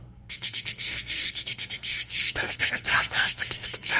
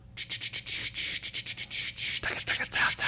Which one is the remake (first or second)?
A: first